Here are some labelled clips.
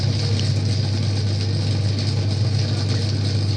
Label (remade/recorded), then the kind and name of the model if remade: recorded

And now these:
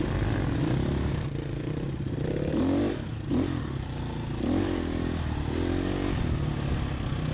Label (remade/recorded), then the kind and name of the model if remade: recorded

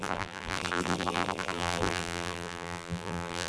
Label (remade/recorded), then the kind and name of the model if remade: remade, vocoder, BigVGAN v2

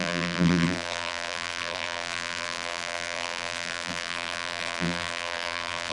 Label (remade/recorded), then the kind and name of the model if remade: remade, vocoder, BigVGAN v2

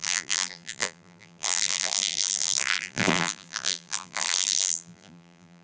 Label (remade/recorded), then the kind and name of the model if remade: remade, vocoder, BigVGAN v2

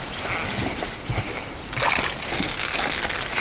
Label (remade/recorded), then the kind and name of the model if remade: recorded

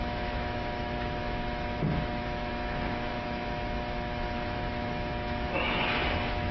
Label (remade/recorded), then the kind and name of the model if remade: remade, autoencoder, DAC-VAE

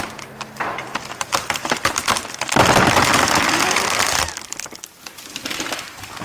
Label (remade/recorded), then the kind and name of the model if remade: remade, vocoder, BigVGAN v2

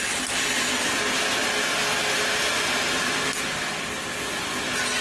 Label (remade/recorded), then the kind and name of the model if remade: recorded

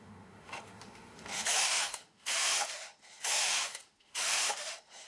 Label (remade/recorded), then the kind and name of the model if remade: remade, autoencoder, DAC-VAE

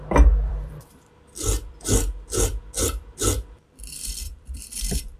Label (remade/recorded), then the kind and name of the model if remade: remade, vocoder, BigVGAN v2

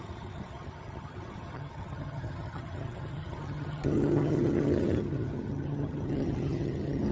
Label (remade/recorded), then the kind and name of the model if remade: remade, vocoder, HiFi-GAN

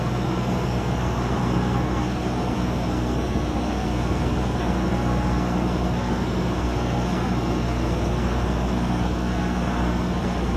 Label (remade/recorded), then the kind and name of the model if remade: remade, codec, SNAC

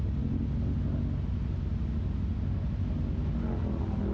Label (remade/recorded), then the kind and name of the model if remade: recorded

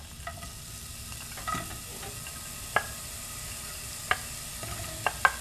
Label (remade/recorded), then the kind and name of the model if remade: recorded